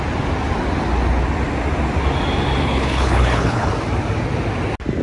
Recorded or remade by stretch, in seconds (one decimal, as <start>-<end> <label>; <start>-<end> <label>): 0.0-2.6 recorded; 2.6-3.7 remade; 3.7-5.0 recorded